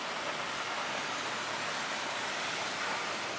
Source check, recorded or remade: recorded